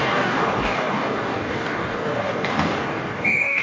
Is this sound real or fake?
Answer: fake